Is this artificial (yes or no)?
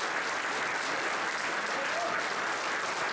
no